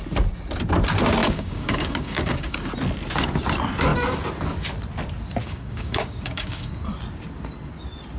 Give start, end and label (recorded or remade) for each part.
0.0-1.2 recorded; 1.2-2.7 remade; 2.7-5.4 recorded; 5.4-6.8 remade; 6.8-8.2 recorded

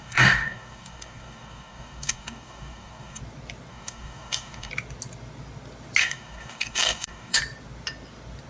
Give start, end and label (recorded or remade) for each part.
0.0-3.2 remade; 3.2-3.7 recorded; 3.7-4.7 remade; 4.7-6.0 recorded; 6.0-7.4 remade; 7.4-8.5 recorded

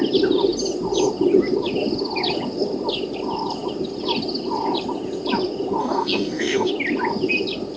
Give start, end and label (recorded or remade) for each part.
0.0-5.8 recorded; 5.8-6.7 remade; 6.7-7.8 recorded

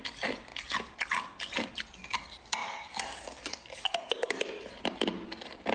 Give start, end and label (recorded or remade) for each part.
0.0-2.6 recorded; 2.6-4.4 remade; 4.4-5.7 recorded